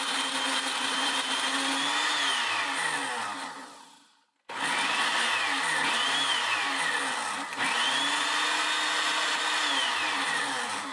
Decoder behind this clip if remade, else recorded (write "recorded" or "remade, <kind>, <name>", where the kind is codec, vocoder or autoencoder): recorded